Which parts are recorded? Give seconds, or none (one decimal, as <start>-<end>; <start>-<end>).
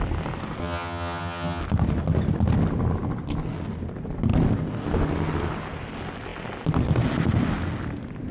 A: 0.0-0.6; 1.6-8.3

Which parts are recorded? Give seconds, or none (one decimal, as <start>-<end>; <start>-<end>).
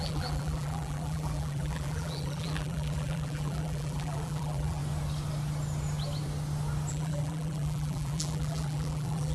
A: 4.8-6.9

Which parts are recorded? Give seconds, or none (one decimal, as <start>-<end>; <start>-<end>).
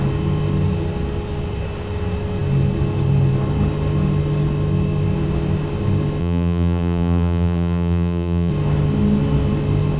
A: 0.0-6.2; 8.5-10.0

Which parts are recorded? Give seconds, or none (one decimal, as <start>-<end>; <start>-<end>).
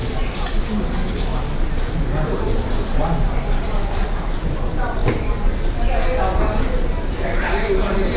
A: 0.0-8.2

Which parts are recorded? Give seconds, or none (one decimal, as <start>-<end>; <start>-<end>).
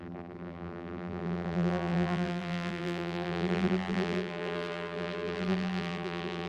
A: none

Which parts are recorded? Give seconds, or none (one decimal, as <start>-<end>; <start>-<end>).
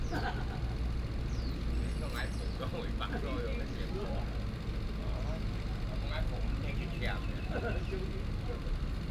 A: 0.0-9.1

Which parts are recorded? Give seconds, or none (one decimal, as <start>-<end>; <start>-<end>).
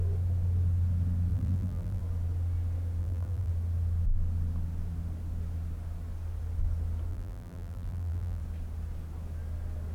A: 0.0-1.3; 2.0-3.0; 3.5-7.1; 8.4-9.9